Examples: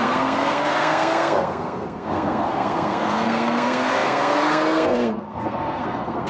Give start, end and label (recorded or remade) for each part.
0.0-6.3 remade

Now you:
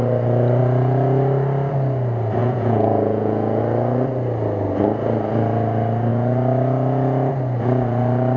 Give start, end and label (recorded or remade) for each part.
0.0-2.4 recorded; 2.4-3.6 remade; 3.6-8.4 recorded

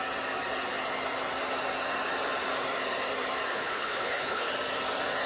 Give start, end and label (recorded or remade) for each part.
0.0-3.5 recorded; 3.5-4.5 remade; 4.5-5.3 recorded

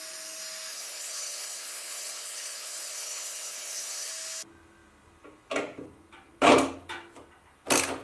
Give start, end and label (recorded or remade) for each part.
0.0-0.7 recorded; 0.7-4.1 remade; 4.1-8.0 recorded

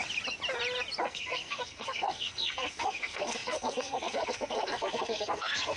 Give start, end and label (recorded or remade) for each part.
0.0-1.0 recorded; 1.0-5.8 remade

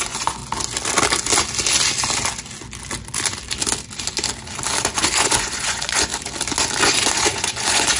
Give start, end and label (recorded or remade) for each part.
0.0-0.4 remade; 0.4-4.8 recorded; 4.8-6.1 remade; 6.1-6.8 recorded; 6.8-8.0 remade